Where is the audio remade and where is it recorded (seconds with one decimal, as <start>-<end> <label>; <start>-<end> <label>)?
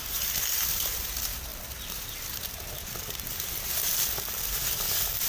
0.0-5.3 recorded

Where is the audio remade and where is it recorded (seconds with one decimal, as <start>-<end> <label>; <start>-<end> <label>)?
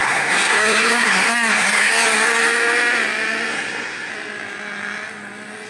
0.0-1.9 remade; 1.9-3.5 recorded; 3.5-4.1 remade; 4.1-5.7 recorded